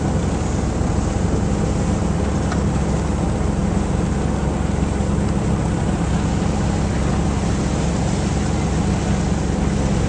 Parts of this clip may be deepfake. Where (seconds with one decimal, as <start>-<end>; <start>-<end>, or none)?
none